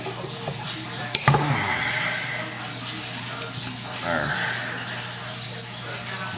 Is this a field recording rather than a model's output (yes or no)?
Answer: yes